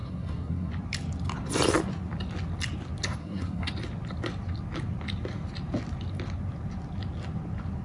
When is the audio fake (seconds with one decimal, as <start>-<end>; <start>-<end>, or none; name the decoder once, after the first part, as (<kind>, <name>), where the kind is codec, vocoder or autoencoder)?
0.0-0.7 (codec, SNAC); 3.2-3.7